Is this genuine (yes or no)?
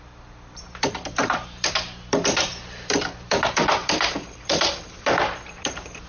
no